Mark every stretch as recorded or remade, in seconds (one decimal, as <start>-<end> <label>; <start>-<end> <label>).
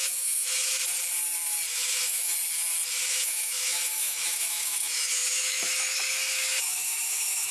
0.0-0.8 remade; 0.8-1.7 recorded; 1.7-2.3 remade; 2.3-3.1 recorded; 3.1-7.5 remade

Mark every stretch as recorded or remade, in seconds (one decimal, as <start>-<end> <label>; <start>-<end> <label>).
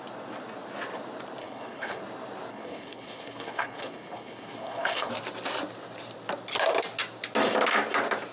0.0-1.4 recorded; 1.4-2.0 remade; 2.0-2.5 recorded; 2.5-5.1 remade; 5.1-8.3 recorded